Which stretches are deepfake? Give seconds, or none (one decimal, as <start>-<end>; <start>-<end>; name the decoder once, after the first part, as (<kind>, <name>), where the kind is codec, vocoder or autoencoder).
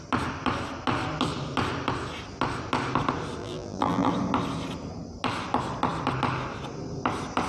3.4-4.1 (vocoder, BigVGAN v2)